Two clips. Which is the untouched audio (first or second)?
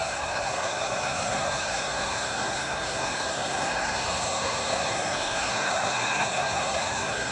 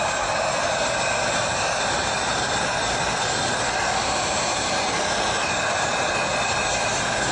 second